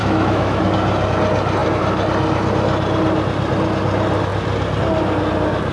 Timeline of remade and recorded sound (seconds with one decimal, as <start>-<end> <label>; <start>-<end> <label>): 0.0-0.6 remade; 0.6-5.7 recorded